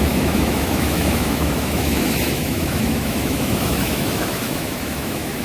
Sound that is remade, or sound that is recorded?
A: remade